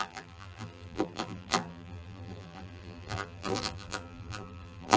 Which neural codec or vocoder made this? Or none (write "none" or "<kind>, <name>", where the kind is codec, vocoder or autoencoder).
vocoder, BigVGAN v2